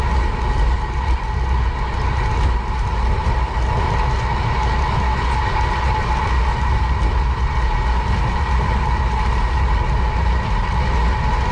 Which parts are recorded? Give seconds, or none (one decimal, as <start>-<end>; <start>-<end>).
0.0-11.5